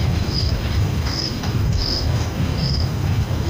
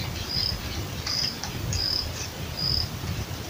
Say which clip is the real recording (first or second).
second